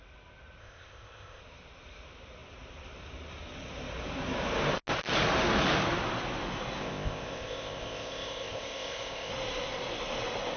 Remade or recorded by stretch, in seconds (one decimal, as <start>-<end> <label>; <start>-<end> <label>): 0.0-0.6 recorded; 0.6-1.4 remade; 1.4-6.8 recorded; 6.8-9.3 remade; 9.3-10.6 recorded